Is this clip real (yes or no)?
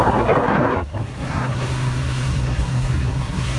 no